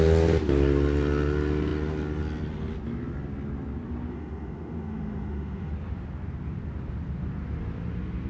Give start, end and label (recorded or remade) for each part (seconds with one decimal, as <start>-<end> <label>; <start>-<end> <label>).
0.0-4.1 recorded; 4.1-5.7 remade; 5.7-8.3 recorded